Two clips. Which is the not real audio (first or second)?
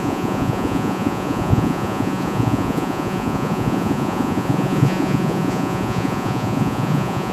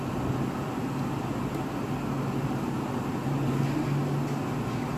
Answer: first